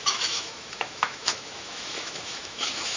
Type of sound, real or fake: fake